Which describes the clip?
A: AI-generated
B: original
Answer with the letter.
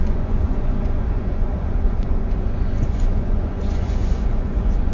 A